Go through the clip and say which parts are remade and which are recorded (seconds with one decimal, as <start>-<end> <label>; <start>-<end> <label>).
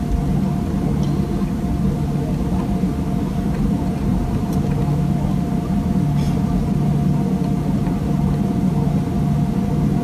0.0-4.1 recorded; 4.1-4.8 remade; 4.8-10.0 recorded